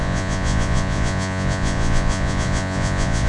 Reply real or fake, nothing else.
fake